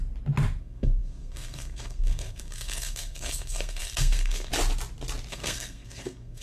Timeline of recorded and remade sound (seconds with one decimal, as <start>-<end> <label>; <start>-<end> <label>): 0.0-0.6 recorded; 0.6-4.5 remade; 4.5-5.3 recorded; 5.3-6.4 remade